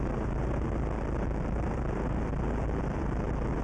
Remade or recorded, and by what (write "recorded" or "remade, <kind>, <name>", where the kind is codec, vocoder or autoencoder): remade, vocoder, BigVGAN v2